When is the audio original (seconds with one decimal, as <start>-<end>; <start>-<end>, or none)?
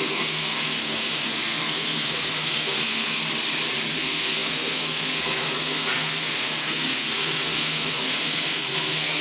3.2-3.9